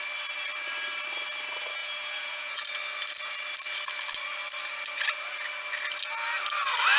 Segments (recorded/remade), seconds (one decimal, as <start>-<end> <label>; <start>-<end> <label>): 0.0-1.8 recorded; 1.8-2.5 remade; 2.5-7.0 recorded